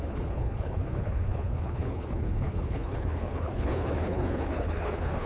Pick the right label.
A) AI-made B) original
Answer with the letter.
A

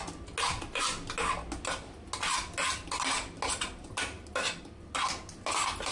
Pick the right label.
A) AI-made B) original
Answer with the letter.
B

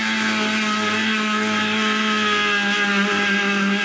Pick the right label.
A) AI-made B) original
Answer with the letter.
B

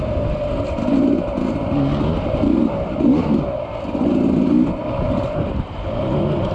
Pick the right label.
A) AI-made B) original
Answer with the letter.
B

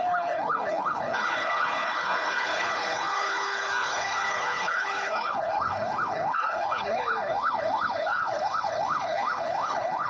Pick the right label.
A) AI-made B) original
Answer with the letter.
A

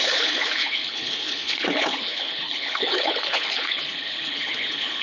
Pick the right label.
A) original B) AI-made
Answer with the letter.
B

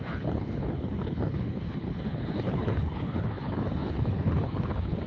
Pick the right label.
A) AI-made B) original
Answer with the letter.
A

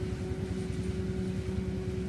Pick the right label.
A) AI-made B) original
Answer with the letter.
B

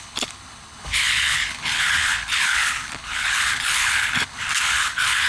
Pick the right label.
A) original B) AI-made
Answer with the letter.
B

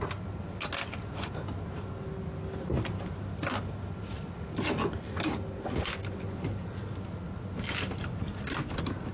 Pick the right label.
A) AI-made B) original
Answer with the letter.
B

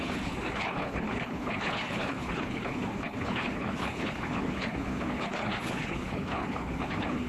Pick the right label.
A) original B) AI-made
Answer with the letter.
B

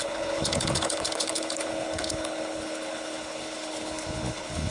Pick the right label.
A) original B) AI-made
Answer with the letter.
B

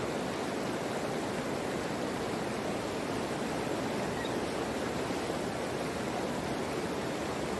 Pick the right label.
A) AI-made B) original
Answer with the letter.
B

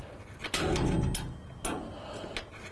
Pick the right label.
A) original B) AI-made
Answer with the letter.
A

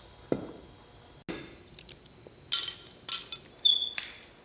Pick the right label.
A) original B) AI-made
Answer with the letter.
A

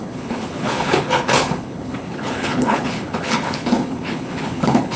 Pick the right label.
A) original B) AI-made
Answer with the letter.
B